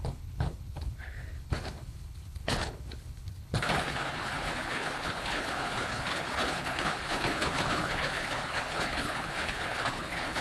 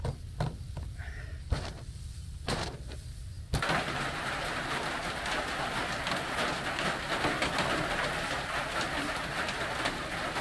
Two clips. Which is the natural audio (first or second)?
second